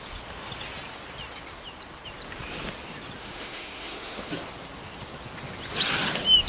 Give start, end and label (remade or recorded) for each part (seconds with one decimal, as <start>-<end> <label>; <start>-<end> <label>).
0.0-3.2 recorded; 3.2-4.3 remade; 4.3-6.5 recorded